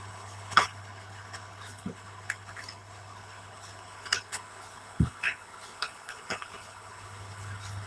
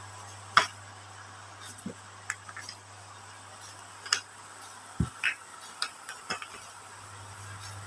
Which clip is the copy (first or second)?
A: first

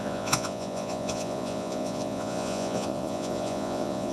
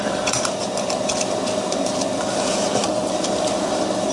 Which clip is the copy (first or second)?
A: first